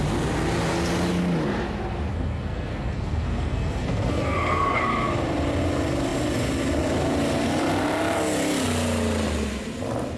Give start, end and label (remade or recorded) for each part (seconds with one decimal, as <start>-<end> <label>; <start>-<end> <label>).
0.0-2.1 recorded; 2.1-4.8 remade; 4.8-10.2 recorded